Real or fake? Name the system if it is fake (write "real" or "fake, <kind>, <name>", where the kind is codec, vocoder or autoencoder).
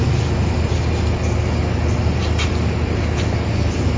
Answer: real